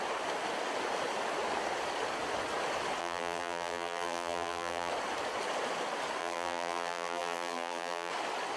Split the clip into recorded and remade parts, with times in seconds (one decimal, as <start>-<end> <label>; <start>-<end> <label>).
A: 0.0-3.0 recorded; 3.0-4.9 remade; 4.9-6.2 recorded; 6.2-8.1 remade; 8.1-8.6 recorded